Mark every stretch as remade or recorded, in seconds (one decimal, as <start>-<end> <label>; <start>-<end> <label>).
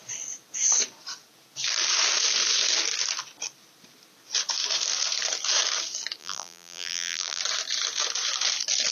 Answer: 0.0-6.2 recorded; 6.2-7.4 remade; 7.4-8.9 recorded